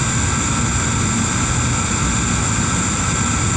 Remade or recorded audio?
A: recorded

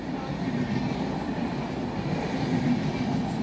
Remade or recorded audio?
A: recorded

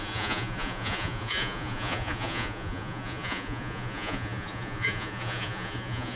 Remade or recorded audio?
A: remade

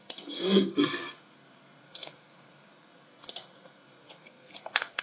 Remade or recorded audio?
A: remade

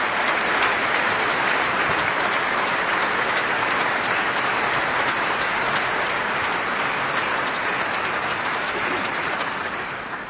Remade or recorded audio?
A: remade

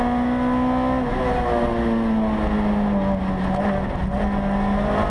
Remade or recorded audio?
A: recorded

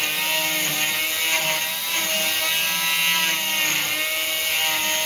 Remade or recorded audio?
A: recorded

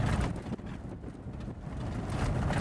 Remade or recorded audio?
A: recorded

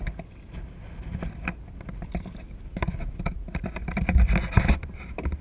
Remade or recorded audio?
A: recorded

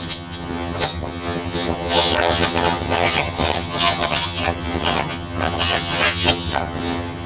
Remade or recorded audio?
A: remade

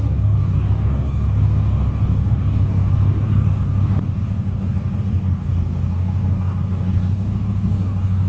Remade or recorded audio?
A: remade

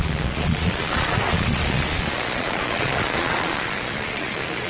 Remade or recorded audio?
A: remade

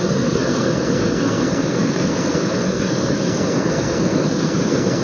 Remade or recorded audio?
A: remade